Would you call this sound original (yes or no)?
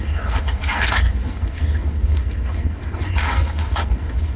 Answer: no